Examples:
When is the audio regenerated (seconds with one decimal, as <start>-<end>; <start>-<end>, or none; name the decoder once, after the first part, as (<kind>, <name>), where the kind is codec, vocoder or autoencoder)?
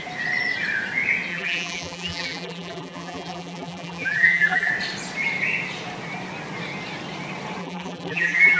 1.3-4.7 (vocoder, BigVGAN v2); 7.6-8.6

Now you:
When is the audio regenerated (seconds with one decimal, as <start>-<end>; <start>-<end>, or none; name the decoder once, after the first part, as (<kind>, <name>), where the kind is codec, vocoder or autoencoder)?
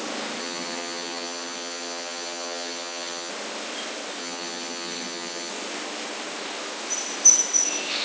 0.4-3.3 (vocoder, HiFi-GAN); 4.2-5.5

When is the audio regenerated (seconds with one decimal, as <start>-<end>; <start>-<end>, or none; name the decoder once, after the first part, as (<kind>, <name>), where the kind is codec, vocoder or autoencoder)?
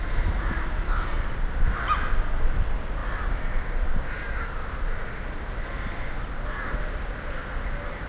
none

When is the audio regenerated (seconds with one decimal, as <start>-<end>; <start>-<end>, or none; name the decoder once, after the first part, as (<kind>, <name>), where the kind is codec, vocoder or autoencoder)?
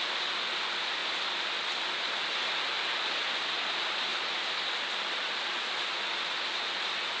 none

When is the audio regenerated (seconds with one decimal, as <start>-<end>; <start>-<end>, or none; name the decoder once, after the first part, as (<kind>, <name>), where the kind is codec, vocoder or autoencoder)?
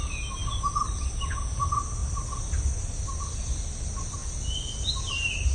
none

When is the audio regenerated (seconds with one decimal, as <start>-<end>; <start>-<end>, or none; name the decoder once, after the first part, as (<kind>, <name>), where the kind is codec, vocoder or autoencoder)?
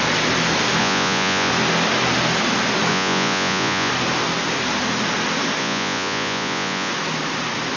0.8-1.5 (vocoder, Vocos); 2.9-3.9; 5.6-6.9